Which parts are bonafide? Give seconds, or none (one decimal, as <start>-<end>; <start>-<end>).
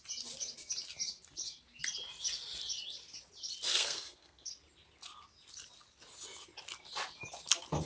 0.0-3.7; 4.5-7.9